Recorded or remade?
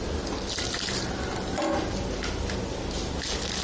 recorded